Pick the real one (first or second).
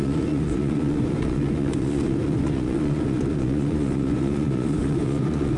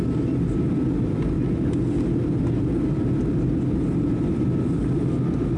second